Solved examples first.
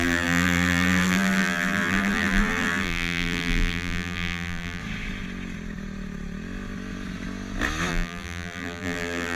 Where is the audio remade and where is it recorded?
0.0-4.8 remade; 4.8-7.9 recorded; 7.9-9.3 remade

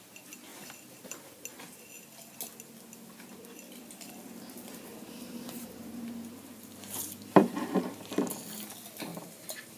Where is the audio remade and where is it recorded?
0.0-4.9 recorded; 4.9-8.1 remade; 8.1-9.1 recorded; 9.1-9.8 remade

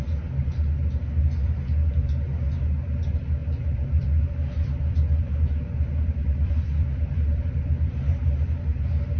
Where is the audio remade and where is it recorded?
0.0-3.4 recorded; 3.4-7.9 remade; 7.9-9.2 recorded

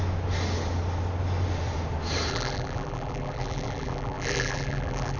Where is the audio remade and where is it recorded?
0.0-2.3 recorded; 2.3-5.2 remade

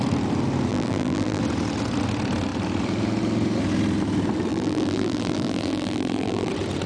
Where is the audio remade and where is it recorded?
0.0-0.7 recorded; 0.7-1.4 remade; 1.4-4.5 recorded; 4.5-6.5 remade; 6.5-6.9 recorded